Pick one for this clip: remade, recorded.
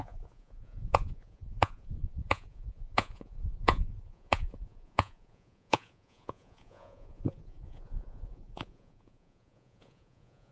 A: remade